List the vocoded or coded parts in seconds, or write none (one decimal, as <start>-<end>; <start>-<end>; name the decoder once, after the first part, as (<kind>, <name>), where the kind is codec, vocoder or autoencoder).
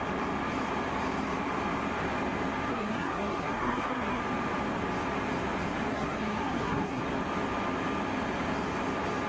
2.7-4.2 (codec, SNAC); 5.9-7.0